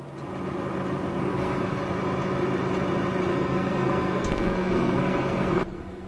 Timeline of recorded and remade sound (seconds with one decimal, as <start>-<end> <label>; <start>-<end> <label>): 0.0-1.2 recorded; 1.2-1.8 remade; 1.8-3.3 recorded; 3.3-6.1 remade

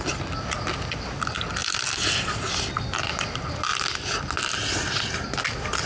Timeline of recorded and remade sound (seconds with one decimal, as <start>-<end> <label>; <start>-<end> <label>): 0.0-5.9 recorded

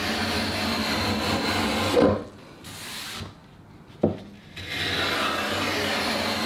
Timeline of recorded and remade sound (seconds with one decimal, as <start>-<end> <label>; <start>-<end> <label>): 0.0-6.5 recorded

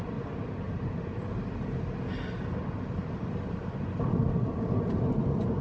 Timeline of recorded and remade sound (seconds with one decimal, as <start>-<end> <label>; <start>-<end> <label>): 0.0-5.6 recorded

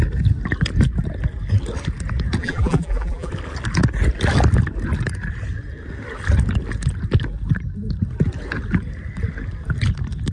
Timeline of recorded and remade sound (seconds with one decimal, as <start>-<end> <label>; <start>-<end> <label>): 0.0-2.4 recorded; 2.4-3.3 remade; 3.3-10.3 recorded

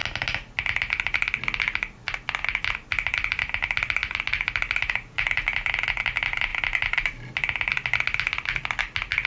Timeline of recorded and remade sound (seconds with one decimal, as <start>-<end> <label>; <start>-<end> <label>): 0.0-9.3 recorded

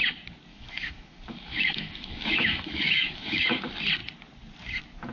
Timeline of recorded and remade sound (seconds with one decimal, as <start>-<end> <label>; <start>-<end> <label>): 0.0-0.5 recorded; 0.5-3.6 remade; 3.6-5.1 recorded